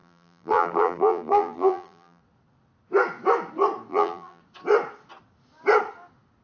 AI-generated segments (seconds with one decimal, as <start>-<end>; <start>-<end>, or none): 0.0-2.2; 3.9-4.4